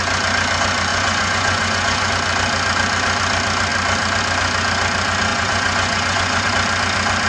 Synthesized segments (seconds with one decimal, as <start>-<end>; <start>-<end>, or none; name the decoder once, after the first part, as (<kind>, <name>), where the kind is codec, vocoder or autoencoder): 0.9-2.1 (vocoder, Vocos); 5.3-6.5